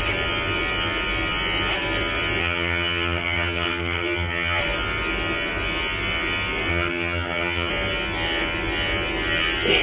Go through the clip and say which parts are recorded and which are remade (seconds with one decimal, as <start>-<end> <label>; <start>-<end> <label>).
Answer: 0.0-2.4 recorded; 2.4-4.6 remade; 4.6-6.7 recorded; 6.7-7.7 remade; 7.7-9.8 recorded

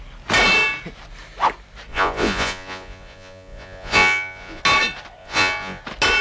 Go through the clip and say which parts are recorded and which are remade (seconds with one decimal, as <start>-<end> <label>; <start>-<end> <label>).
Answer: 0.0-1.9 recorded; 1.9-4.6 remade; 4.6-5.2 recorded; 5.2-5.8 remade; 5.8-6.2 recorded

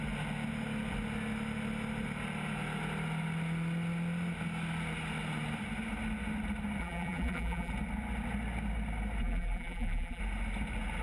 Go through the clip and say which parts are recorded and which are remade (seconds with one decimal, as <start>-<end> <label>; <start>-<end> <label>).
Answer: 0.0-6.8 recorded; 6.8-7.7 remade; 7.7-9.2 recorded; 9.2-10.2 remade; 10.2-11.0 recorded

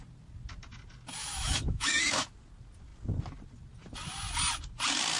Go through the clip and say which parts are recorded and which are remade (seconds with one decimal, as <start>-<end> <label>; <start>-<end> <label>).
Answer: 0.0-1.2 recorded; 1.2-2.3 remade; 2.3-5.2 recorded